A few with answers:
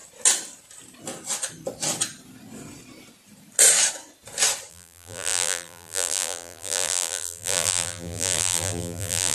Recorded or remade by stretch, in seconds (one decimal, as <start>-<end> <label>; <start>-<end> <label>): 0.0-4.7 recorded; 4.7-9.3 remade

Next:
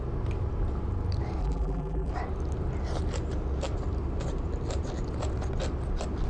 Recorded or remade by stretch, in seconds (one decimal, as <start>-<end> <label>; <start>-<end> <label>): 0.0-1.4 recorded; 1.4-2.1 remade; 2.1-6.3 recorded

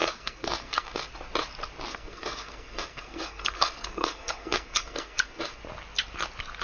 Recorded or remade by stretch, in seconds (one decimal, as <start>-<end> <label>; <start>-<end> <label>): 0.0-1.1 remade; 1.1-1.9 recorded; 1.9-5.6 remade; 5.6-6.6 recorded